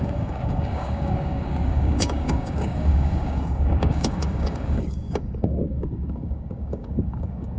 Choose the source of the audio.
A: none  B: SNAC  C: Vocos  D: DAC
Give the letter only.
D